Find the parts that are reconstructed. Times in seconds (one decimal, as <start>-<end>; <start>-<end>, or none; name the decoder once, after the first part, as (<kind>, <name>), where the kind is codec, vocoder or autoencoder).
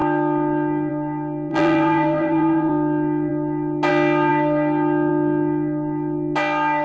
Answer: 1.5-2.7 (vocoder, BigVGAN v2)